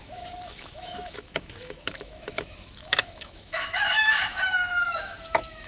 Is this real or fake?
fake